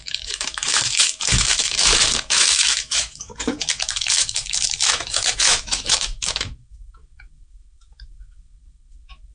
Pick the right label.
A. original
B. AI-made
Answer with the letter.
B